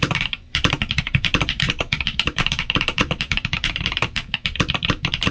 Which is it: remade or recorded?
remade